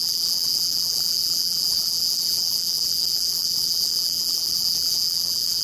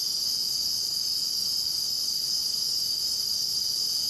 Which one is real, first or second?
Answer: second